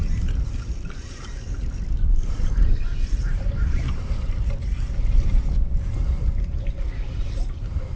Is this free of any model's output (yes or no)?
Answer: no